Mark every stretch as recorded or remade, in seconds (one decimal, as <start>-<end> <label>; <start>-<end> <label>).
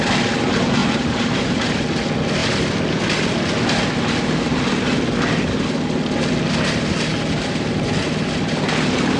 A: 0.0-0.8 recorded; 0.8-1.6 remade; 1.6-9.2 recorded